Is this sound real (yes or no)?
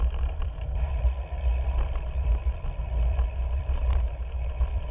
no